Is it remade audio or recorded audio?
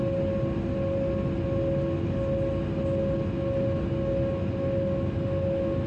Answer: recorded